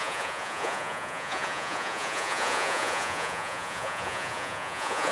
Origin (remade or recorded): remade